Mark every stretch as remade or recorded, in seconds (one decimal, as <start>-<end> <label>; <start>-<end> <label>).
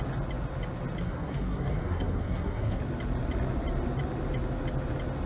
0.0-1.0 recorded; 1.0-2.8 remade; 2.8-5.3 recorded